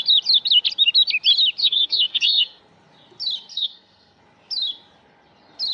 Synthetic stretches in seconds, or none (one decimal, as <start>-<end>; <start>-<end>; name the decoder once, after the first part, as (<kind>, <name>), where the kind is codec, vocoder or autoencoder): 1.6-2.6 (codec, SNAC); 3.5-4.2